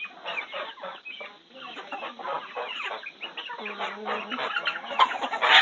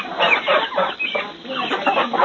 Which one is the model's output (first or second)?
second